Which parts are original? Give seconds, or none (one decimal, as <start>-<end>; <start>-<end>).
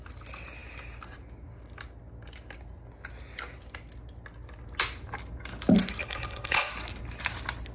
0.0-6.0; 6.7-7.7